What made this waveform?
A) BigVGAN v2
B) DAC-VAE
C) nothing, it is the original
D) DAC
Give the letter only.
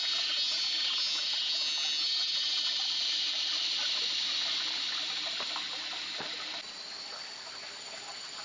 C